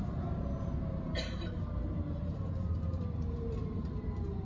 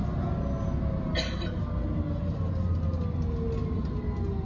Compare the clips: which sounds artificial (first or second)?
first